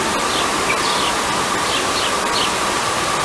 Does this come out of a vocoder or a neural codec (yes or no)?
no